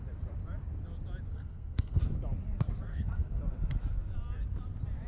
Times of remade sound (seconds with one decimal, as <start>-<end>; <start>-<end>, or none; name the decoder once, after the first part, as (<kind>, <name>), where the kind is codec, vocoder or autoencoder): 1.3-2.0 (codec, SNAC); 2.9-3.4